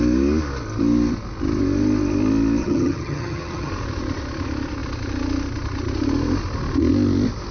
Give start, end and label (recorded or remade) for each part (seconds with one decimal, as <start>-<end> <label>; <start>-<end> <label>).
0.0-2.6 recorded; 2.6-3.7 remade; 3.7-7.5 recorded